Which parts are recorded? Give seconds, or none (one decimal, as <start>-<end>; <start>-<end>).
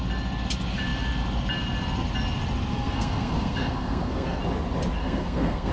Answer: 0.0-2.7; 4.4-5.0